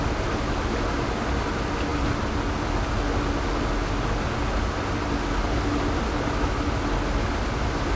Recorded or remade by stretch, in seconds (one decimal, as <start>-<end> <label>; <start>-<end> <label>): 0.0-8.0 recorded